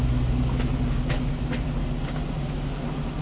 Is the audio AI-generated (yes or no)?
no